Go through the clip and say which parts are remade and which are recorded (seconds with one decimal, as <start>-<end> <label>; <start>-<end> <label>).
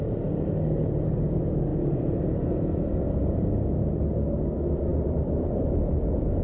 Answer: 0.0-1.7 recorded; 1.7-3.4 remade; 3.4-6.4 recorded